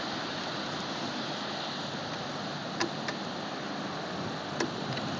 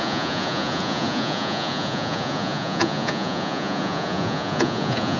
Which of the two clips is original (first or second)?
first